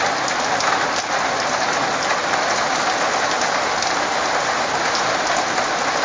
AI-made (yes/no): no